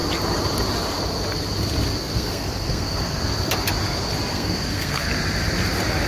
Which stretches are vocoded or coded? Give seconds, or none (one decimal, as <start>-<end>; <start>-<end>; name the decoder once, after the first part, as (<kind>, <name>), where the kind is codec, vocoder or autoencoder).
2.0-3.2 (codec, SNAC); 4.3-5.1